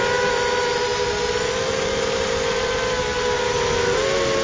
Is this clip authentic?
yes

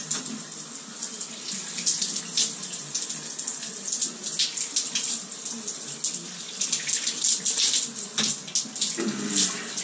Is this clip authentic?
yes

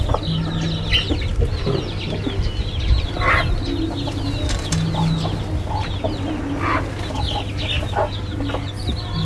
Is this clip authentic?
yes